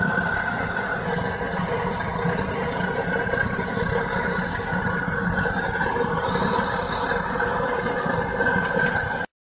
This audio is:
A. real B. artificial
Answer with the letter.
A